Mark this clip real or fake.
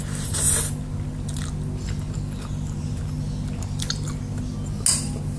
real